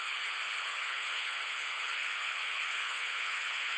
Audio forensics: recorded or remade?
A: remade